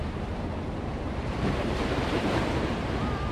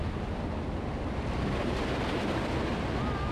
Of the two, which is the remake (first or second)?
first